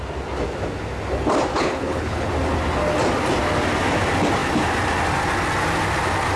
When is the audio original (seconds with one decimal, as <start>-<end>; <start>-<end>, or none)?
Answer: 0.0-1.5; 2.3-6.4